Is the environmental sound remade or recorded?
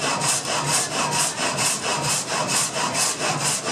recorded